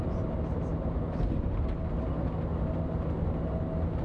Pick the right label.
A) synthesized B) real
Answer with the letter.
B